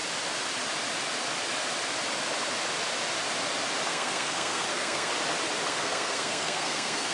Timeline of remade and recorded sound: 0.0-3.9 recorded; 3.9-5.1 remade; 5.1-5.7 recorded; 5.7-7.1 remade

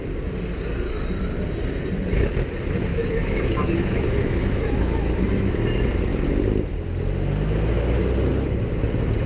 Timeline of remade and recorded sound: 0.0-2.9 recorded; 2.9-5.5 remade; 5.5-9.3 recorded

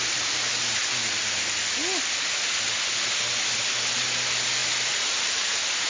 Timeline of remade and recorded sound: 0.0-5.9 recorded

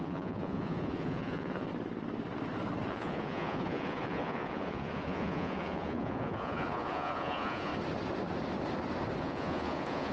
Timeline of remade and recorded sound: 0.0-1.7 remade; 1.7-2.9 recorded; 2.9-7.7 remade; 7.7-9.2 recorded; 9.2-10.1 remade

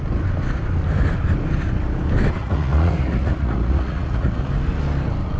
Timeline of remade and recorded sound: 0.0-2.4 recorded; 2.4-4.5 remade; 4.5-5.4 recorded

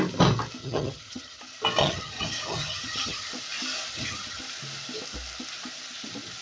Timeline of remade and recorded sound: 0.0-0.6 recorded; 0.6-1.4 remade; 1.4-1.8 recorded; 1.8-3.3 remade; 3.3-3.9 recorded; 3.9-4.4 remade; 4.4-6.4 recorded

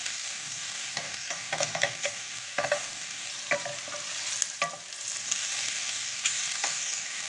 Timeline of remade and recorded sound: 0.0-3.3 remade; 3.3-5.2 recorded; 5.2-7.3 remade

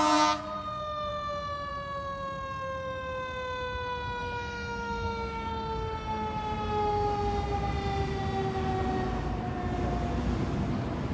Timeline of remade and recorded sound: 0.0-4.2 recorded; 4.2-5.5 remade; 5.5-11.1 recorded